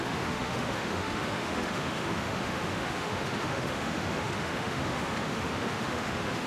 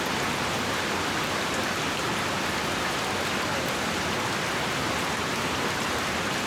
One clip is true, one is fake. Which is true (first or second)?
second